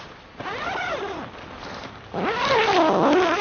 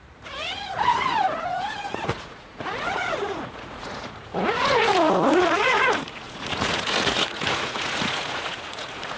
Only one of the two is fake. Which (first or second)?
second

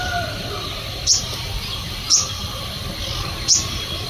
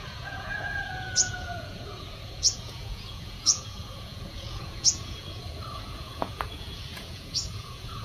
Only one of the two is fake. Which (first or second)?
second